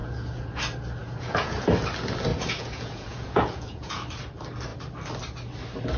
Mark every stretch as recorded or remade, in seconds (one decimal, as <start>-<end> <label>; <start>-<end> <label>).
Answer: 0.0-0.6 remade; 0.6-1.0 recorded; 1.0-1.6 remade; 1.6-2.3 recorded; 2.3-4.0 remade; 4.0-6.0 recorded